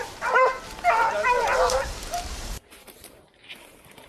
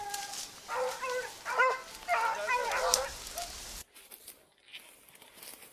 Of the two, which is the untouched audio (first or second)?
second